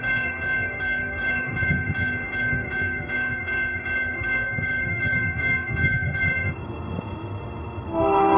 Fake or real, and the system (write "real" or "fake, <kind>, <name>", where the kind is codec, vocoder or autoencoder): fake, autoencoder, DAC-VAE